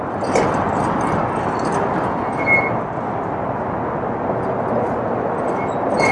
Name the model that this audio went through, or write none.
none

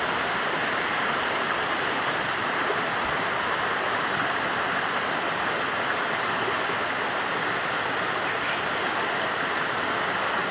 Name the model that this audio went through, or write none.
none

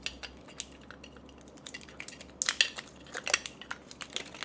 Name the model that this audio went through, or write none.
none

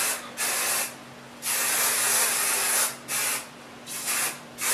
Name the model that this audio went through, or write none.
none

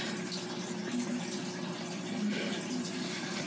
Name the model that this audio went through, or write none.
none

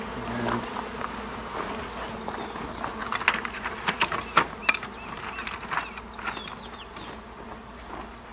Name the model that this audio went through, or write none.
none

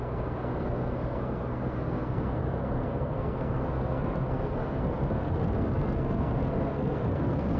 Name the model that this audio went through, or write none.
codec, SNAC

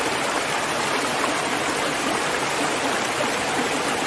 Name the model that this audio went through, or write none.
none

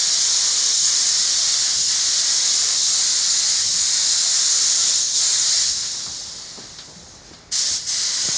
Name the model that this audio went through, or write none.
none